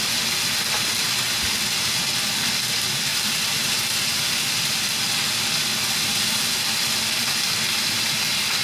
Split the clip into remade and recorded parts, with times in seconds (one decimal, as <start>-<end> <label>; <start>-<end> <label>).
0.0-8.6 recorded